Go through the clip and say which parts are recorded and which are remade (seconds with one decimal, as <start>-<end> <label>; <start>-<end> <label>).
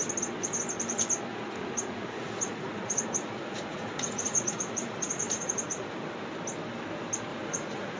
0.0-1.3 recorded; 1.3-6.1 remade; 6.1-7.3 recorded; 7.3-8.0 remade